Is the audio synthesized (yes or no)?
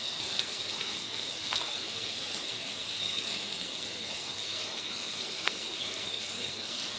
yes